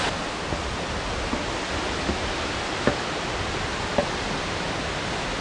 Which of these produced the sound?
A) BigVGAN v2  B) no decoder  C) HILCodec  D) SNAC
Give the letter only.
B